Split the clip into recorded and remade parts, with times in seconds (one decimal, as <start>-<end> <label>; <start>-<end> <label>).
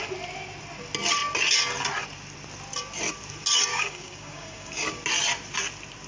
0.0-3.7 recorded; 3.7-5.0 remade; 5.0-6.1 recorded